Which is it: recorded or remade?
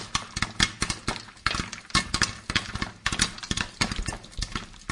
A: recorded